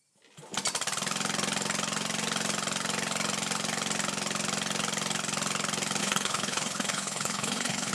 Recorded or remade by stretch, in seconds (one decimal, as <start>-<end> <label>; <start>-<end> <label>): 0.0-6.0 recorded; 6.0-7.9 remade